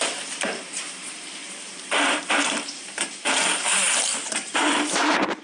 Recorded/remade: remade